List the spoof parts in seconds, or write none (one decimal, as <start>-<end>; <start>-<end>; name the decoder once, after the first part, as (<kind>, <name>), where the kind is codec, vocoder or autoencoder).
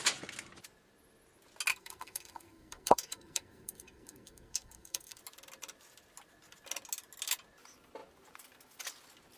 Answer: 1.7-5.2 (codec, SNAC)